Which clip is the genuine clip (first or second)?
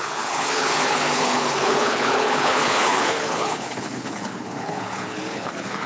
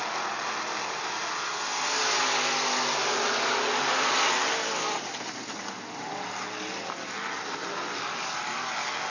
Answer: second